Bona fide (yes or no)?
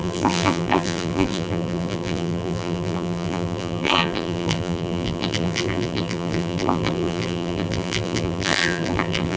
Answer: no